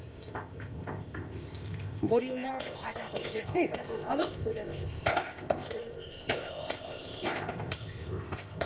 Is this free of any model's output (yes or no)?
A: no